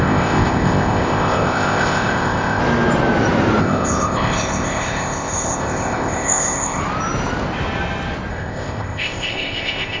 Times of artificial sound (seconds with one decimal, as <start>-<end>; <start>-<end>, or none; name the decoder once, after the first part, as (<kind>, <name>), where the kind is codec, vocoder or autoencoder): 0.0-2.6 (codec, ZipCodec); 3.6-6.8; 8.3-10.0